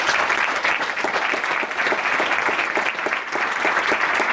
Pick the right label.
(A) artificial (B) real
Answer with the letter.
B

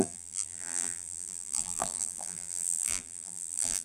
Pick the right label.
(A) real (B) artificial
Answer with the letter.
B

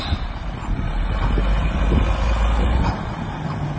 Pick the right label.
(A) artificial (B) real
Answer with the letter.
B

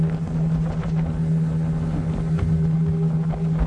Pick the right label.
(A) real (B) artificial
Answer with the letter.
A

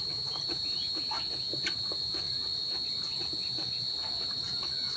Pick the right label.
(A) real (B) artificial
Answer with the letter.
B